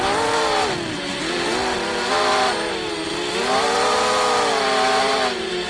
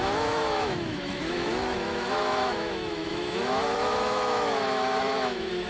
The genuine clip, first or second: first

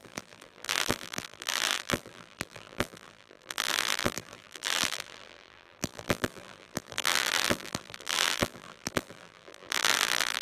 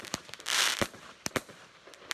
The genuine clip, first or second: second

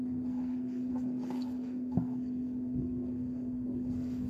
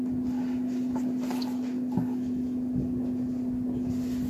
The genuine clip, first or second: second